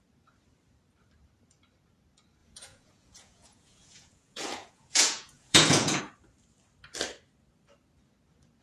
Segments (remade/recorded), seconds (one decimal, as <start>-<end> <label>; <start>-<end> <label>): 0.0-2.4 recorded; 2.4-6.0 remade; 6.0-8.6 recorded